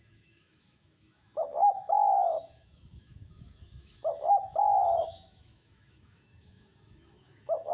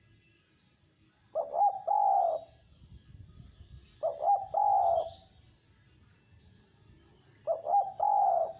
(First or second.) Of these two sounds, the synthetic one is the first